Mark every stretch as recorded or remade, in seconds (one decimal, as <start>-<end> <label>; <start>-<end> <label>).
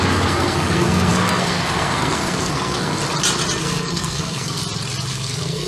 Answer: 0.0-3.0 remade; 3.0-3.6 recorded; 3.6-4.6 remade; 4.6-5.1 recorded; 5.1-5.7 remade